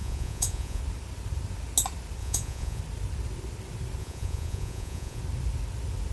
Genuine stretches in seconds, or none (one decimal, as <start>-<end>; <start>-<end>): 0.8-2.2; 2.8-4.0; 5.2-6.1